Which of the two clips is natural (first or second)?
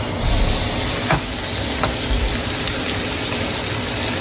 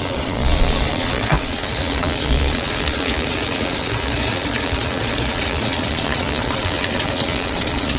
first